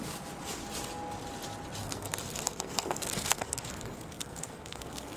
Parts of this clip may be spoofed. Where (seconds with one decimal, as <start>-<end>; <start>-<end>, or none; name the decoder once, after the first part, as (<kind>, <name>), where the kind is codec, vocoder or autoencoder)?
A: 1.8-5.2 (codec, SNAC)